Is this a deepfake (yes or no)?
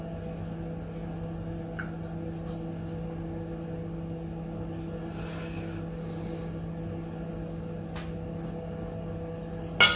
no